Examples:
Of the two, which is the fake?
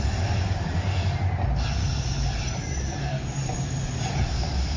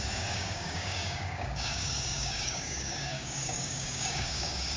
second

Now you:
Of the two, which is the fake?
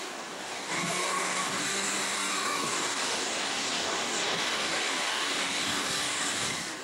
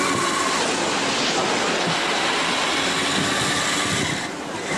first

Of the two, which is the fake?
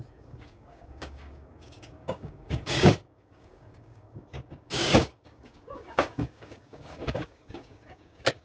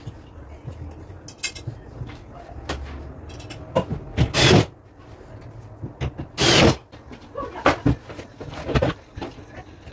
first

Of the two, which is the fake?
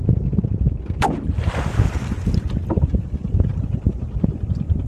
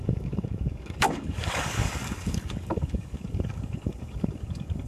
second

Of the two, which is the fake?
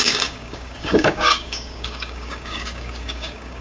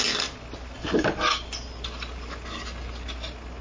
first